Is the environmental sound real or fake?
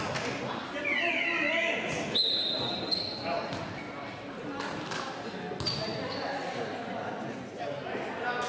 real